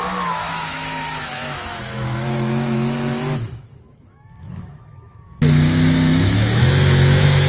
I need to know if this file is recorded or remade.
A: remade